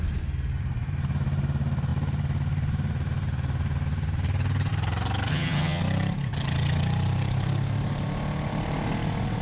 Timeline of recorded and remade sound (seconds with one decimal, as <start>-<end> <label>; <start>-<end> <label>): 0.0-5.3 recorded; 5.3-5.8 remade; 5.8-9.4 recorded